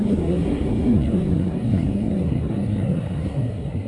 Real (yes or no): no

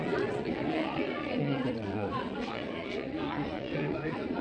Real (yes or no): no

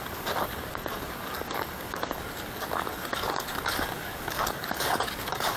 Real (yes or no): no